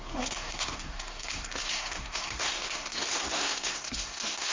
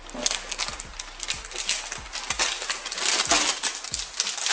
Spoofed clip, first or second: first